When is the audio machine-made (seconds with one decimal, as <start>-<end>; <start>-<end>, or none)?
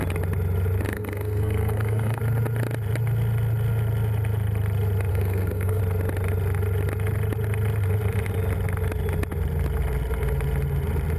0.9-2.2; 5.1-5.8